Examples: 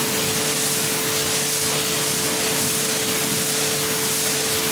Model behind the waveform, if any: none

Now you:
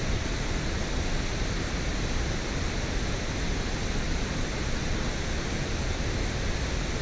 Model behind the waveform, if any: none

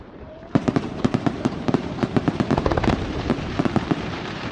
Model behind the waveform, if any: vocoder, BigVGAN v2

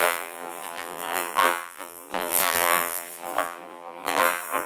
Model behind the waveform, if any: vocoder, BigVGAN v2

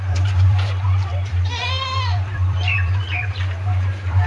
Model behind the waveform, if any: vocoder, BigVGAN v2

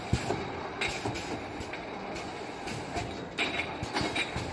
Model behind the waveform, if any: none